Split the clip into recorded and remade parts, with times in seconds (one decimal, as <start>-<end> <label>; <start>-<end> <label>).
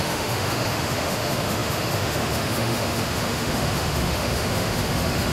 0.0-5.3 remade